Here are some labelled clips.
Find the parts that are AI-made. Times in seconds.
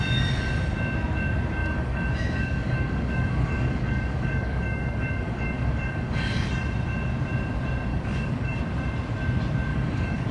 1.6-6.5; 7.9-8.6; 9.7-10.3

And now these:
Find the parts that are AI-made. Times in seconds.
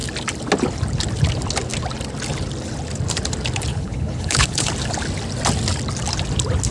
3.7-4.7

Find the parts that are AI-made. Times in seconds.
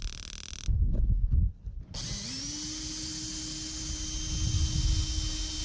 none